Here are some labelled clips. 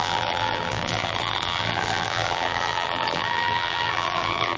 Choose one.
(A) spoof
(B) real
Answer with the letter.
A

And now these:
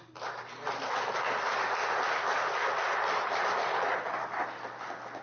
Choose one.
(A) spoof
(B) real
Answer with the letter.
B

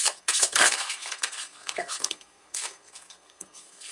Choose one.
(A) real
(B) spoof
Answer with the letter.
B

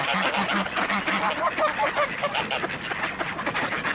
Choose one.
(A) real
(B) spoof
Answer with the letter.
A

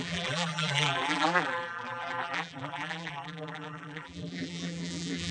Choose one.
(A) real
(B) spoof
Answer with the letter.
B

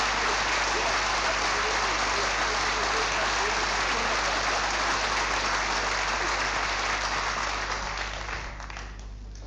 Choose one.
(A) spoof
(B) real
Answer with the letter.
B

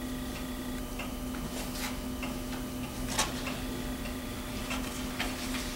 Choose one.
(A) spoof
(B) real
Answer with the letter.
B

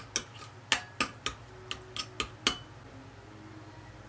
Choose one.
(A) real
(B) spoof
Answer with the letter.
A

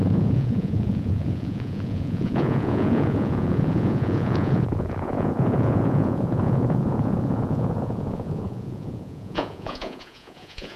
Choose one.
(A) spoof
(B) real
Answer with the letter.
A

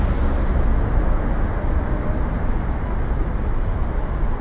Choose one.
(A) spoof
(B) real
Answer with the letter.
B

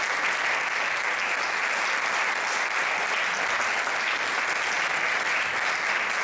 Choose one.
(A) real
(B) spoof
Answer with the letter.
A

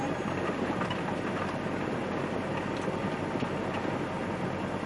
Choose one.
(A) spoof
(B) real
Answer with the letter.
B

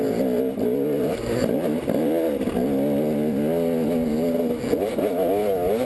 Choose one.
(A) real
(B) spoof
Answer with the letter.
A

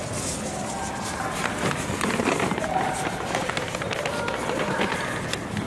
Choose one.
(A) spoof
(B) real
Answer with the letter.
B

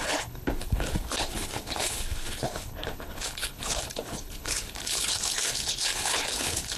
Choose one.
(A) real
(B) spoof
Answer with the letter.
B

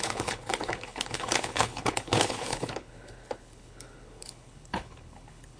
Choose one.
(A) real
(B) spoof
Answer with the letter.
B